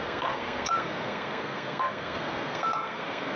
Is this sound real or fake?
fake